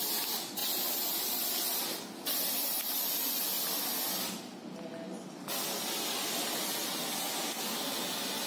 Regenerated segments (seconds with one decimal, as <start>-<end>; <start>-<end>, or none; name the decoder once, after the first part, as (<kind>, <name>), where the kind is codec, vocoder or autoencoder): none